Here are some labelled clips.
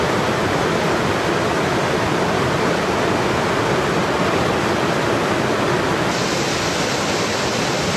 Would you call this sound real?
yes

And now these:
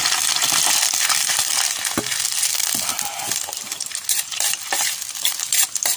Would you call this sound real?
yes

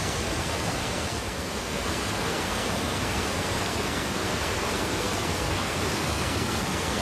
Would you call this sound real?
no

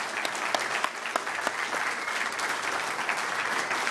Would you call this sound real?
yes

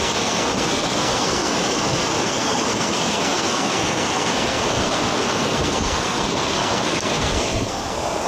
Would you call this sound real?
no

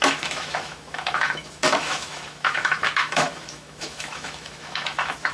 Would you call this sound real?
no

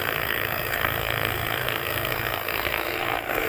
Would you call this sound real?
no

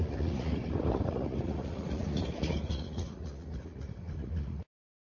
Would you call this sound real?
no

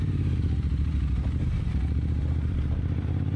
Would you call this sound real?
no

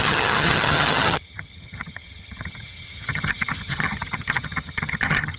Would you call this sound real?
no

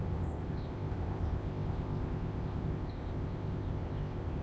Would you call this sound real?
no